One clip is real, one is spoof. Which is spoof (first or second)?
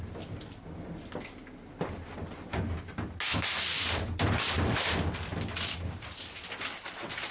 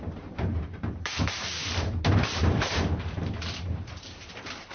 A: second